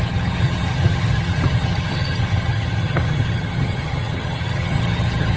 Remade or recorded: remade